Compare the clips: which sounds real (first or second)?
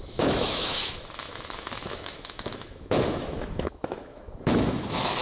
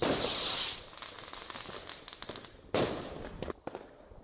second